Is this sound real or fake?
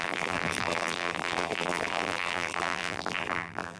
fake